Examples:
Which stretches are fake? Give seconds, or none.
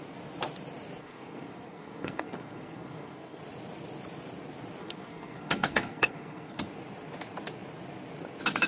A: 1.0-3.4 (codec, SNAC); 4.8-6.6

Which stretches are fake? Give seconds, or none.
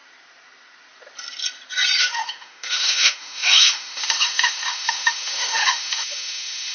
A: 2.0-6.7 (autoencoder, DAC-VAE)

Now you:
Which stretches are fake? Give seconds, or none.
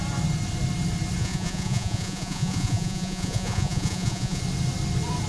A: 1.2-4.4 (vocoder, Vocos)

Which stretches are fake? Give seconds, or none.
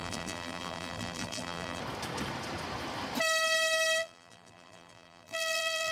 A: 0.0-1.8 (vocoder, BigVGAN v2); 4.0-5.9